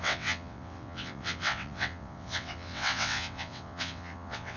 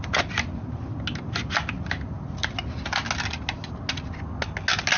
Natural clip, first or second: second